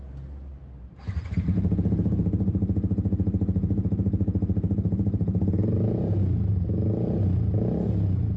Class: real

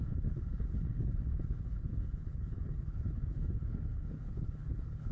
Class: fake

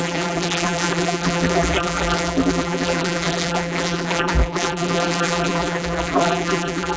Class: fake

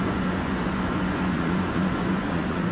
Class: fake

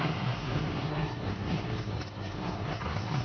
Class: fake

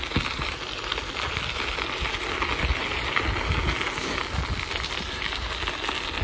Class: real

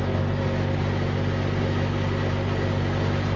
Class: real